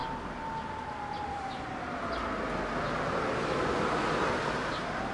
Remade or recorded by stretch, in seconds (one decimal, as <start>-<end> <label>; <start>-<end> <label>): 0.0-5.1 recorded